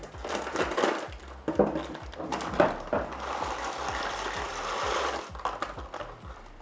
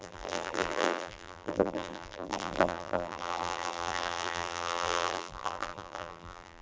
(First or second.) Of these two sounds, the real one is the first